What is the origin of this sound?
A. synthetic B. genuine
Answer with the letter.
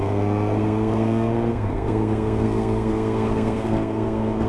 A